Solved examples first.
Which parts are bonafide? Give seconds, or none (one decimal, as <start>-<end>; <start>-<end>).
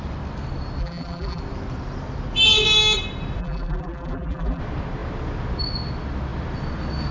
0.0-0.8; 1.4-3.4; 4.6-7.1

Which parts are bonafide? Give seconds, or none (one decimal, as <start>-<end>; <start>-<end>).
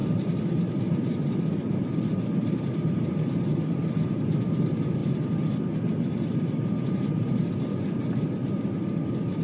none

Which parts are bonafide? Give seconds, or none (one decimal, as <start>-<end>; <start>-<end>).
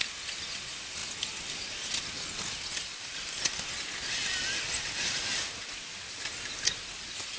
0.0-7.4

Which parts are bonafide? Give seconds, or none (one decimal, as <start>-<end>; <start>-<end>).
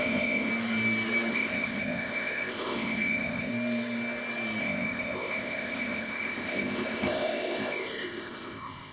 0.5-1.3; 3.5-4.6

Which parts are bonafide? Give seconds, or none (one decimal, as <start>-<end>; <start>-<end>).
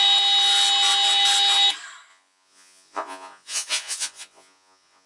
0.0-2.1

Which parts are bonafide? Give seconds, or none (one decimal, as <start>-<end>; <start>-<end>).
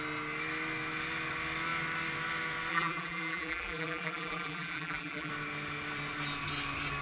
0.0-2.7; 5.3-7.0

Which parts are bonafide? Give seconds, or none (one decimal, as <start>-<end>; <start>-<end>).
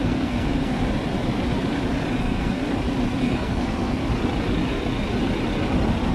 0.8-2.2; 2.6-3.2; 4.0-6.1